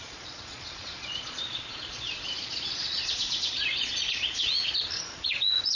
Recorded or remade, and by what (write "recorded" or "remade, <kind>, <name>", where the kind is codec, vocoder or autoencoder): remade, vocoder, Vocos